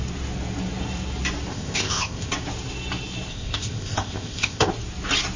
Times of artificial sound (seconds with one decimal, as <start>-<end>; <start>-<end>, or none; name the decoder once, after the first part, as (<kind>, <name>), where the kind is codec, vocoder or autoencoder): 1.5-2.3 (codec, ZipCodec); 3.3-4.7